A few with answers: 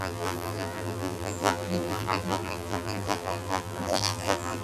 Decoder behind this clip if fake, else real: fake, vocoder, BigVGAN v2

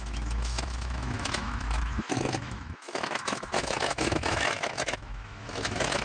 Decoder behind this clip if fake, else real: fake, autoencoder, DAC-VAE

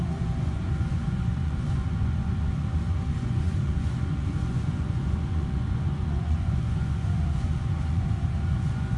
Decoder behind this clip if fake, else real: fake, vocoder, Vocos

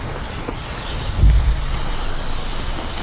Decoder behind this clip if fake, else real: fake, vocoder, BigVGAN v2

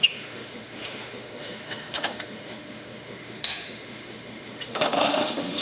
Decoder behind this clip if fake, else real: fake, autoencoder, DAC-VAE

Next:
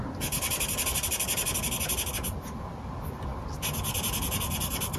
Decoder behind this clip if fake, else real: real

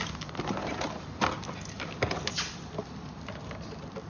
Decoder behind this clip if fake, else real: real